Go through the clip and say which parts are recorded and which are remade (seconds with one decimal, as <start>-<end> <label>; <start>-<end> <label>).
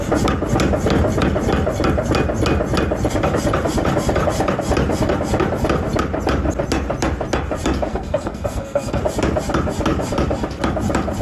0.0-7.9 recorded; 7.9-9.0 remade; 9.0-11.2 recorded